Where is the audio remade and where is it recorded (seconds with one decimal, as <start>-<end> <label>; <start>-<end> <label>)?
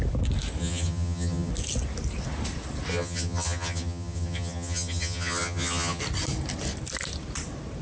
0.0-0.6 recorded; 0.6-1.5 remade; 1.5-2.9 recorded; 2.9-6.0 remade; 6.0-7.8 recorded